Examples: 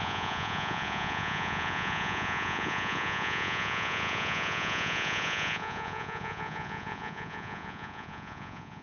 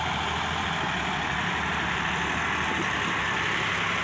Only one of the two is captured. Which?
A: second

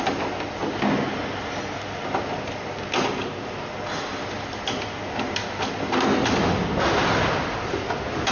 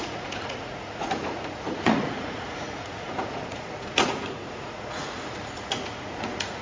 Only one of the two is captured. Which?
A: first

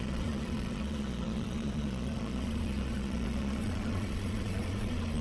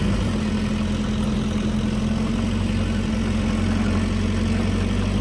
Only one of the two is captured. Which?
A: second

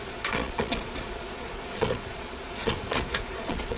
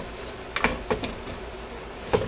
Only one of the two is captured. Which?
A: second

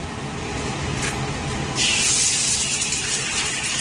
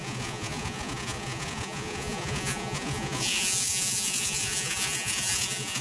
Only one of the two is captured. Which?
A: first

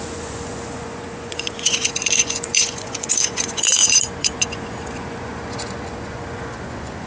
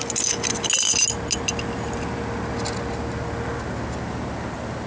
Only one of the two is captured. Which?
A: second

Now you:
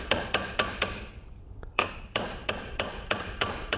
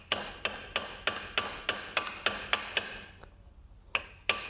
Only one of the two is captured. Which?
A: second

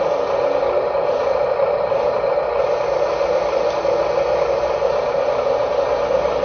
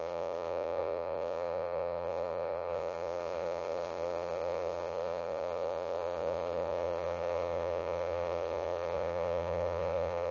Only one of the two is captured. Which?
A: first